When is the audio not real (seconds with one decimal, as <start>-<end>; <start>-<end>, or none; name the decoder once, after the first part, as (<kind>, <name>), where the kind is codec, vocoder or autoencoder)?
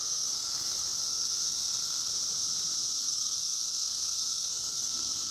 0.0-2.1 (codec, SNAC); 3.0-5.3